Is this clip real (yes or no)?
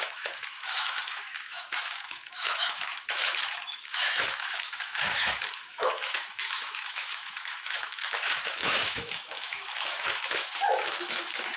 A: no